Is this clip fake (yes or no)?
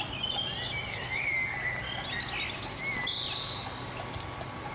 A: no